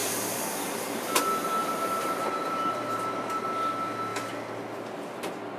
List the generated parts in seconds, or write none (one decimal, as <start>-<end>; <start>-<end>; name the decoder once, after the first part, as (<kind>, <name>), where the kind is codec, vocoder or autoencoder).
0.0-1.2 (vocoder, BigVGAN v2); 1.6-3.4